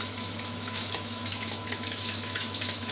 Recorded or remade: remade